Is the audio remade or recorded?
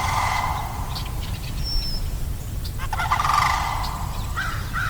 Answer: recorded